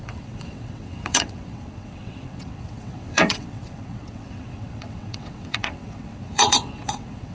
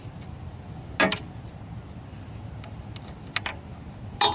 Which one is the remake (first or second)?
first